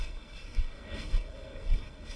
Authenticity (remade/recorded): remade